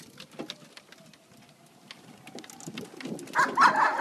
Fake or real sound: real